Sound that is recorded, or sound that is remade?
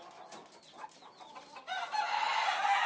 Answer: recorded